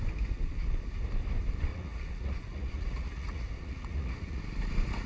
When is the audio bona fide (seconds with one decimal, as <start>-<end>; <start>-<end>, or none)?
0.0-1.7; 4.4-5.1